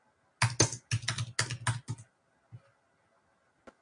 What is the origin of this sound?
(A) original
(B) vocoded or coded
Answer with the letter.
A